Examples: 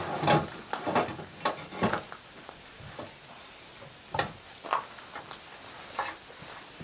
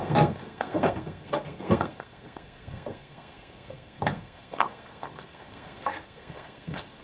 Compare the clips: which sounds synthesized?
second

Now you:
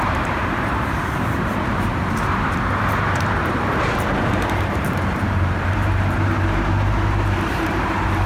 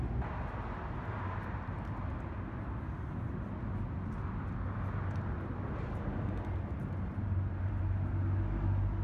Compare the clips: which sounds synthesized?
first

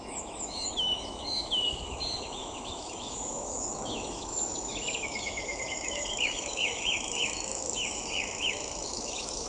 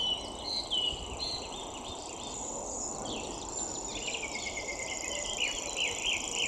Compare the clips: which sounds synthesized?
first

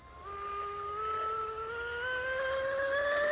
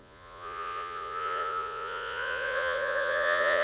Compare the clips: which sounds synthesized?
second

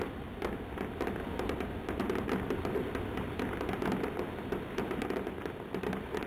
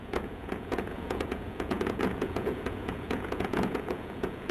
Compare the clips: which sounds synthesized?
second